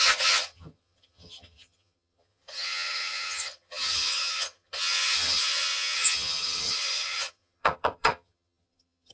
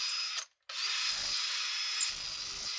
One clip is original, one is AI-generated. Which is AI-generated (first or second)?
first